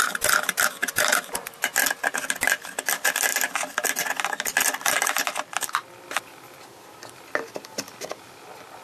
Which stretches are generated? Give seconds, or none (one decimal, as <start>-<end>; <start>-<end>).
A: none